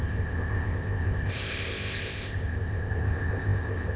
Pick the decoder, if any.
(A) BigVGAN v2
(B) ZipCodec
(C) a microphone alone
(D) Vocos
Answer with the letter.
B